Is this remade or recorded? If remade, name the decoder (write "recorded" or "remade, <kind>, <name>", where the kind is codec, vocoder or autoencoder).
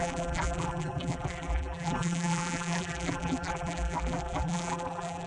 remade, vocoder, BigVGAN v2